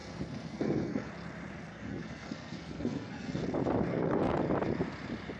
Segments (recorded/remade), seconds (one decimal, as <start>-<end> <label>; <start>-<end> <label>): 0.0-1.1 remade; 1.1-1.7 recorded; 1.7-3.4 remade; 3.4-3.9 recorded; 3.9-4.4 remade; 4.4-5.4 recorded